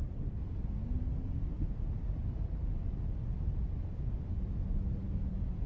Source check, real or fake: real